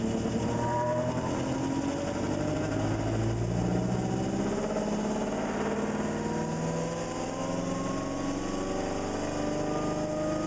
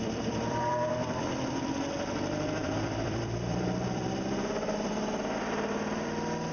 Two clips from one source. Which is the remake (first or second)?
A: second